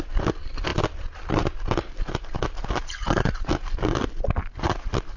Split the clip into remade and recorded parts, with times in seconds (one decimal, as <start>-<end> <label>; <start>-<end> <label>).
0.0-5.2 recorded